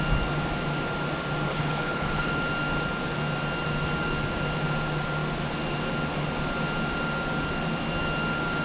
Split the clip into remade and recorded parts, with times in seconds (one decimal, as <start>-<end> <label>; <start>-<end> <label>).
0.0-1.5 recorded; 1.5-2.3 remade; 2.3-8.6 recorded